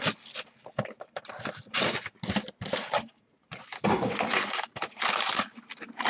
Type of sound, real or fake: real